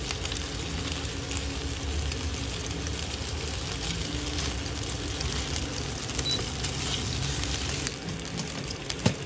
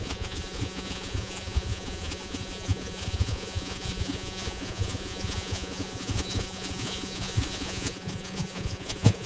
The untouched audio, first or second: first